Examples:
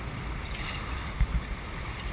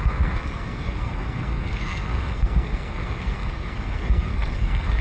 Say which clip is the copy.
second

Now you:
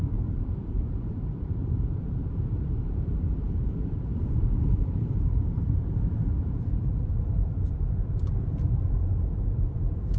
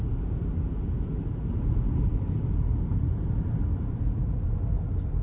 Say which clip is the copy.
first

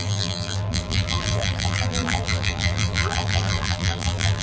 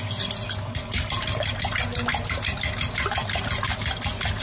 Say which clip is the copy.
first